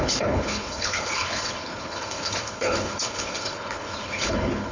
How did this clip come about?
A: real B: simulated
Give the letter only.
B